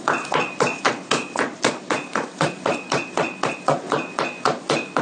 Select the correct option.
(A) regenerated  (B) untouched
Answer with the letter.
A